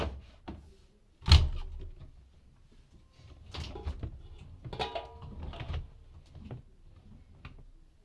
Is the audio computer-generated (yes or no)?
no